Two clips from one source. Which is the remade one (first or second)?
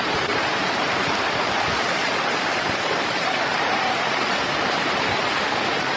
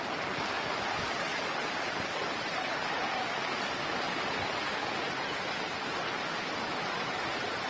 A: first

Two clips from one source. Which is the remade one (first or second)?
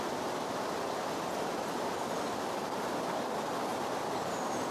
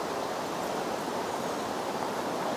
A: first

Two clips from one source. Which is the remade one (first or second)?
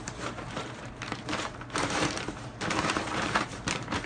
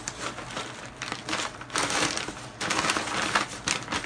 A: first